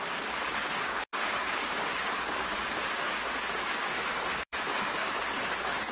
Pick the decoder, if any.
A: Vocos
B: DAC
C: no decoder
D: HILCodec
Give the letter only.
B